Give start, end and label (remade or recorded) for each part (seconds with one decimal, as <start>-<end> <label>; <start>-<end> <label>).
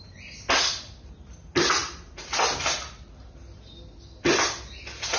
0.0-5.2 recorded